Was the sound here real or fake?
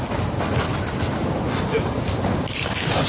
real